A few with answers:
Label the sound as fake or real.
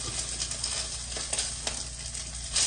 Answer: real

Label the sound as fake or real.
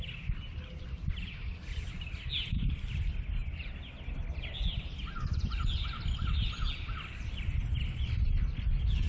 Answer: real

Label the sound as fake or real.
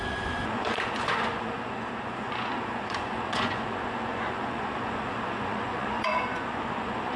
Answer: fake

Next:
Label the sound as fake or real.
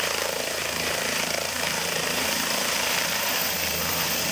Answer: fake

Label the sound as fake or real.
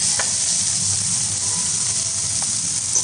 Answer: fake